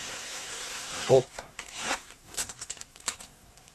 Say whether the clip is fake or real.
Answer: fake